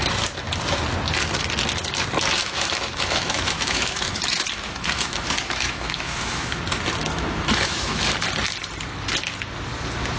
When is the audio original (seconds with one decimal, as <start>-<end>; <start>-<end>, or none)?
0.0-2.4; 6.6-7.1; 8.0-10.2